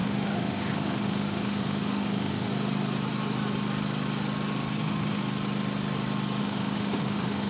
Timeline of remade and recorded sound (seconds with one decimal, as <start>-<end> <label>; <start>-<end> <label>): 0.0-2.5 remade; 2.5-4.8 recorded; 4.8-5.2 remade; 5.2-6.4 recorded; 6.4-7.5 remade